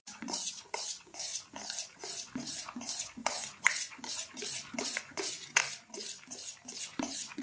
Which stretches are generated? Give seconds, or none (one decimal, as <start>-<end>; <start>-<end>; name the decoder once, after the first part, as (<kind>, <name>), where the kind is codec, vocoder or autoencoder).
0.0-1.3 (vocoder, Vocos); 2.0-5.6; 6.8-7.4